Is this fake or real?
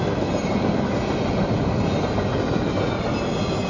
real